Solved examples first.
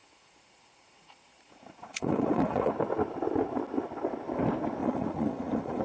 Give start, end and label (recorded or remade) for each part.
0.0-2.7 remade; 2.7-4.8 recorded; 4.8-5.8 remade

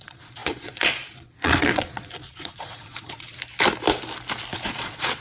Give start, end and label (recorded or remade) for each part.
0.0-3.4 remade; 3.4-4.5 recorded; 4.5-5.2 remade

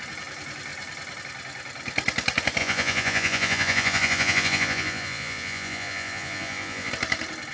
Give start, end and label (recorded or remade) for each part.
0.0-2.6 recorded; 2.6-6.9 remade; 6.9-7.5 recorded

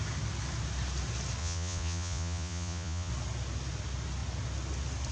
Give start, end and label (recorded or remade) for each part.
0.0-1.4 recorded; 1.4-3.1 remade; 3.1-5.1 recorded